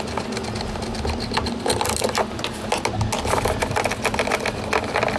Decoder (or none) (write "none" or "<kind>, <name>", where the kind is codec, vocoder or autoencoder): none